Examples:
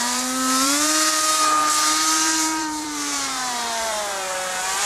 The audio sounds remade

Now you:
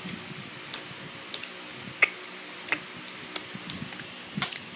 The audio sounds recorded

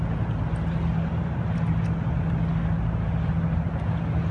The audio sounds recorded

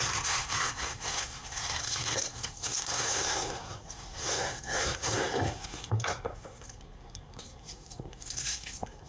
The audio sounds remade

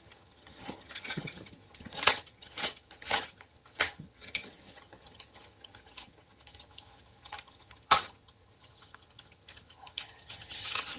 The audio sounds remade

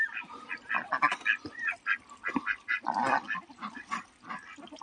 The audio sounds recorded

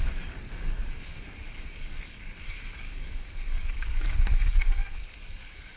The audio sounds remade